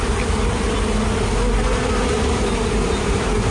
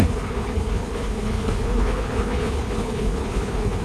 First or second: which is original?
first